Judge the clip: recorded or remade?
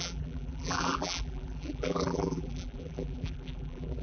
remade